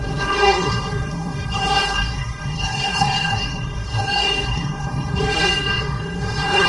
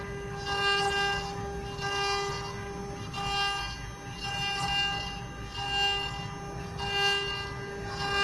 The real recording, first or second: second